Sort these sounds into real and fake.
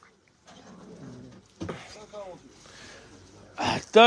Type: real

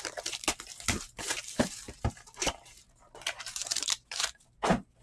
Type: fake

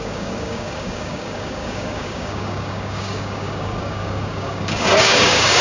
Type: fake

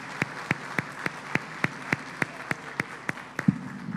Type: real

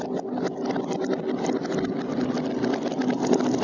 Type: real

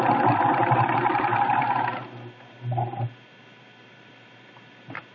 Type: fake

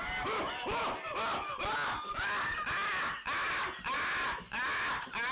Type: real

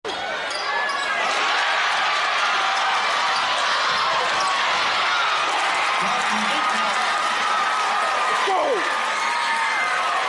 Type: real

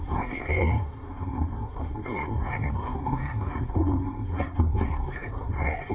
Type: fake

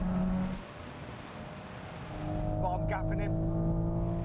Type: real